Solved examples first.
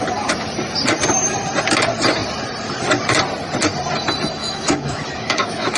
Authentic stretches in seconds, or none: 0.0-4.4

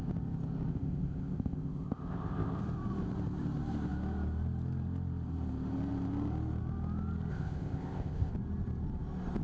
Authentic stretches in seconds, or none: 0.0-0.7; 2.6-7.3; 8.3-9.4

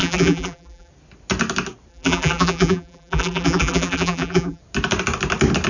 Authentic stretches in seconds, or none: 0.9-1.9; 4.6-5.7

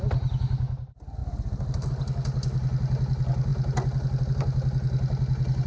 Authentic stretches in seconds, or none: 0.0-5.7

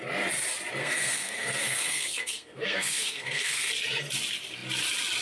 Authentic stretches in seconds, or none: 0.0-0.8; 3.7-5.2

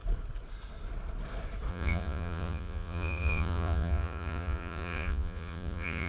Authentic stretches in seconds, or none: 0.0-1.7

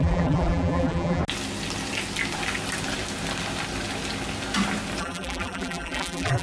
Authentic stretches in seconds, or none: 1.2-5.0